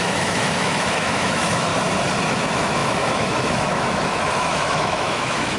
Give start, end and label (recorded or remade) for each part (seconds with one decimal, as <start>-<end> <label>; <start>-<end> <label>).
0.0-1.7 remade; 1.7-2.3 recorded; 2.3-5.6 remade

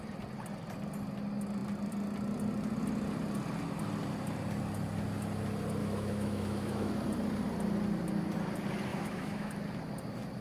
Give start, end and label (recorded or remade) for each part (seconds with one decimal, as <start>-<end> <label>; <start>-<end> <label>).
0.0-5.8 recorded; 5.8-6.9 remade; 6.9-8.9 recorded; 8.9-9.5 remade; 9.5-10.4 recorded

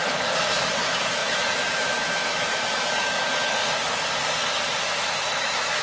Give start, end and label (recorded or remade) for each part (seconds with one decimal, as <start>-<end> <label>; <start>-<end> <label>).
0.0-3.6 remade; 3.6-4.8 recorded; 4.8-5.8 remade